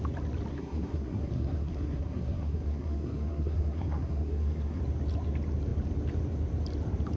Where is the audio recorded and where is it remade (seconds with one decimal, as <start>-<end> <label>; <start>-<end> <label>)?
0.0-0.5 recorded; 0.5-4.8 remade; 4.8-7.2 recorded